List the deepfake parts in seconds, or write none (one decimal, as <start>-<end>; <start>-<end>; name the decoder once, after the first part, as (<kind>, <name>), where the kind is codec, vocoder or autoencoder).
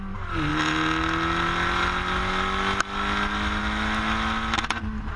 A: none